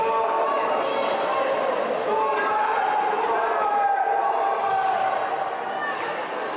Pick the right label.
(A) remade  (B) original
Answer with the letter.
B